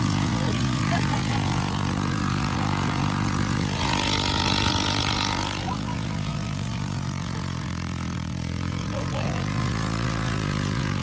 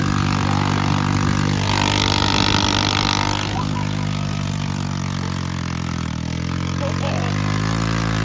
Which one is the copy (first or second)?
first